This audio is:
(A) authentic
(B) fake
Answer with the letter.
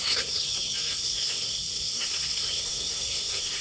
B